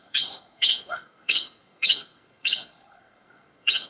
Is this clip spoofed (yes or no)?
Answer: yes